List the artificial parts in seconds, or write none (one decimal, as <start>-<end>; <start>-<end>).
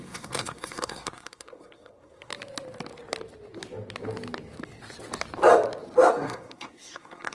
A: 0.0-2.3; 6.1-7.3